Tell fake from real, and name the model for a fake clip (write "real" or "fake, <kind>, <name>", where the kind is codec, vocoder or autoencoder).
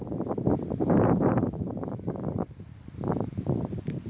fake, vocoder, BigVGAN v2